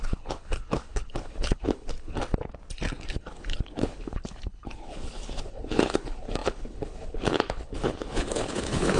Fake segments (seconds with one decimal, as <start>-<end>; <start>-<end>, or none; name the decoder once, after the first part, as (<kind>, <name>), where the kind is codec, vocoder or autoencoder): 0.0-2.2 (codec, HILCodec); 3.1-9.0